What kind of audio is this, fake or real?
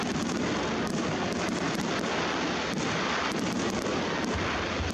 real